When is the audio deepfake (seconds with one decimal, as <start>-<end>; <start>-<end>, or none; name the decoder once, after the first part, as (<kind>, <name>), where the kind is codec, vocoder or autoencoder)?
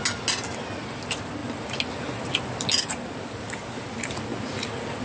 none